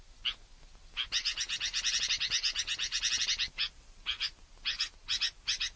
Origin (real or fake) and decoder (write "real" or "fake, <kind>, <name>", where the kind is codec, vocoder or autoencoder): real